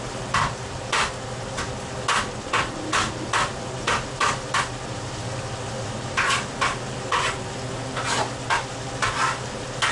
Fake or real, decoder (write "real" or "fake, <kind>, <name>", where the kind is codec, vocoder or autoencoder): real